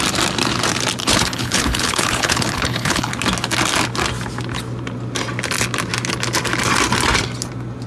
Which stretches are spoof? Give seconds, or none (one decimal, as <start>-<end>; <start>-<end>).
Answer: 1.0-3.1

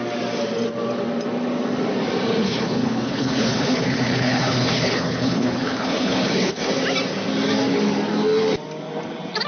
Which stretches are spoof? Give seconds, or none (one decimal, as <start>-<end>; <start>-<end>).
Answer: 2.4-6.7

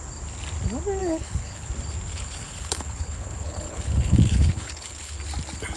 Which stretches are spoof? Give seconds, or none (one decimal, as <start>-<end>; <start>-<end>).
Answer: 1.0-1.7; 2.1-5.2

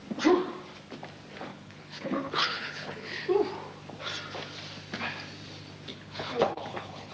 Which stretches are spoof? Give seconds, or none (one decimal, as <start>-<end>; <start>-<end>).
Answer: 1.5-3.2; 5.9-7.1

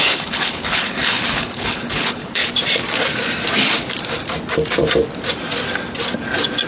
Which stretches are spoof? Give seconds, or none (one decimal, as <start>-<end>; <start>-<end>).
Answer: 0.0-2.4